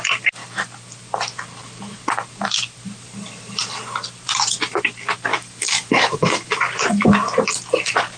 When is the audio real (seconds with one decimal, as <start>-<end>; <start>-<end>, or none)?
0.0-5.3; 6.6-8.2